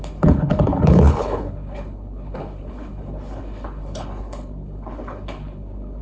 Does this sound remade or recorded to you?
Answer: remade